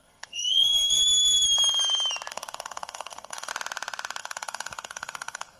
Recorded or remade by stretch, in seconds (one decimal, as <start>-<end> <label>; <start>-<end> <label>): 0.0-1.0 remade; 1.0-2.3 recorded; 2.3-3.5 remade; 3.5-4.2 recorded; 4.2-5.6 remade